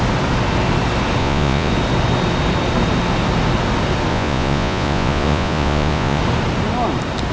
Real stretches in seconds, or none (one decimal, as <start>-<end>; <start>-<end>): 0.0-1.2; 1.7-4.1; 6.2-7.3